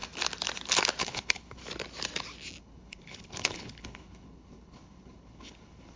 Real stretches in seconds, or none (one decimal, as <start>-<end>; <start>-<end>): 0.0-1.0; 1.6-2.6

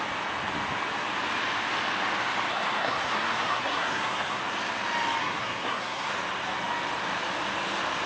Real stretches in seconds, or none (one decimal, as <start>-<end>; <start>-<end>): 0.0-2.5; 4.4-5.2; 6.1-8.1

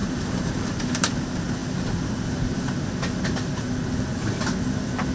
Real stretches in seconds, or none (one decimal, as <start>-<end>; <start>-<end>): 1.1-5.1

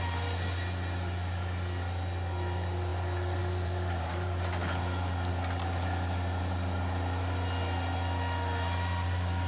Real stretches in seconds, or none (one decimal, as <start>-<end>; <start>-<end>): 0.0-9.5

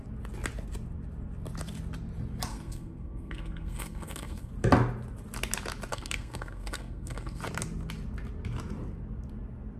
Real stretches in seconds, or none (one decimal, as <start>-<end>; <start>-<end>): 0.0-2.5; 4.5-5.9; 7.4-9.8

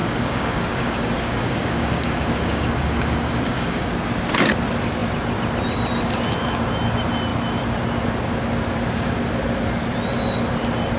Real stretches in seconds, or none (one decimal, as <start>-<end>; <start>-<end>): 3.9-11.0

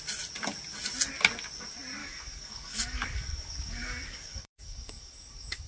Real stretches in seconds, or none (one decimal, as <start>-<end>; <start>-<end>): 0.0-2.0